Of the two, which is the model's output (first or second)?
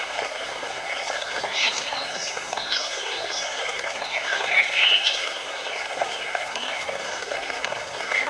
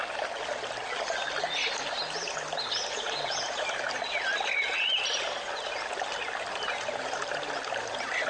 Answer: first